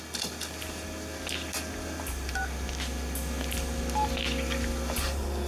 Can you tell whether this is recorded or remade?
recorded